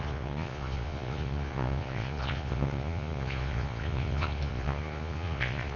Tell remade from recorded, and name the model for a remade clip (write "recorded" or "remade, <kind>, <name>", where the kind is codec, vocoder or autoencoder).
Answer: remade, vocoder, Vocos